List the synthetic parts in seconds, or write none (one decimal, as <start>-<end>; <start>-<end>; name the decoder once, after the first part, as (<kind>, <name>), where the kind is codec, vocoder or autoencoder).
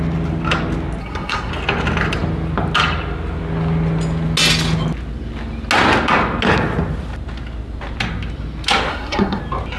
1.0-1.5 (codec, SNAC); 8.9-9.4